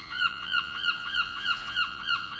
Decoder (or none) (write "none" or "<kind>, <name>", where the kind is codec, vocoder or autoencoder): vocoder, Vocos